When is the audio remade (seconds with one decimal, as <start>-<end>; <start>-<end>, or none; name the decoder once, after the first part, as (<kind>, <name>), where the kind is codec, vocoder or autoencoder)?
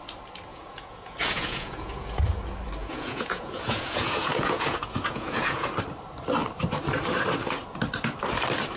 0.5-2.2 (vocoder, Vocos); 2.8-5.7